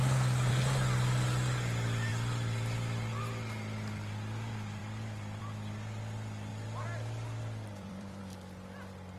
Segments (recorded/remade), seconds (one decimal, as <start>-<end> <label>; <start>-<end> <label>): 0.0-2.1 recorded; 2.1-3.1 remade; 3.1-4.8 recorded; 4.8-5.4 remade; 5.4-6.5 recorded; 6.5-8.2 remade; 8.2-9.2 recorded